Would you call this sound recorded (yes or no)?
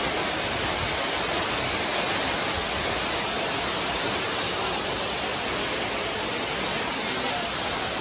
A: yes